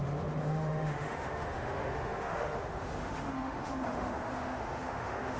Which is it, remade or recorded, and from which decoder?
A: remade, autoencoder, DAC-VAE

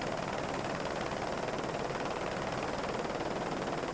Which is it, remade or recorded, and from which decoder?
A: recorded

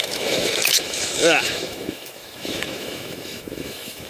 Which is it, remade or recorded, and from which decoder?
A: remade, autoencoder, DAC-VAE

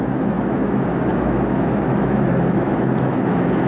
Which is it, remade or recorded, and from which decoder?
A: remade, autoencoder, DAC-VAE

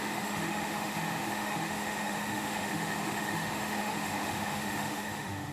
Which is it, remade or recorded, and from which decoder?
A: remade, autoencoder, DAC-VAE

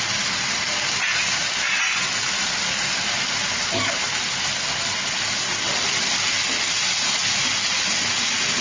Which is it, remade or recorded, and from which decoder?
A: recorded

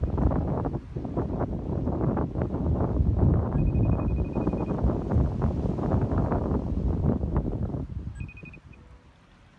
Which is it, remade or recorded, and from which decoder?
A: recorded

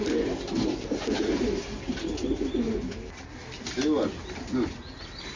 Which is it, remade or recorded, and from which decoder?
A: recorded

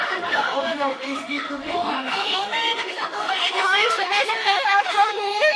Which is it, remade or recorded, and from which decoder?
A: remade, autoencoder, DAC-VAE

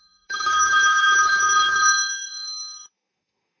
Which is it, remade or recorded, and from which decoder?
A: remade, autoencoder, DAC-VAE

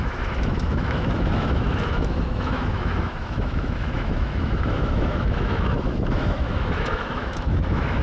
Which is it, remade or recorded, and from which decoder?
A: remade, autoencoder, DAC-VAE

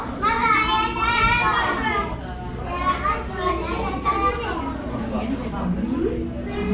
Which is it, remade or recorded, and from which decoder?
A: recorded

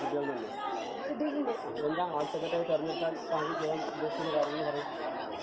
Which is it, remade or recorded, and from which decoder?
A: remade, autoencoder, DAC-VAE